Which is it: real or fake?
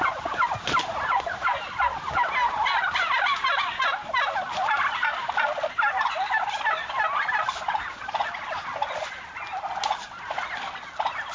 real